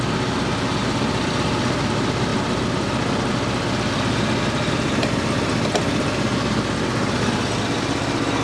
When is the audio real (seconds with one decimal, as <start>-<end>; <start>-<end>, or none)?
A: 0.0-8.4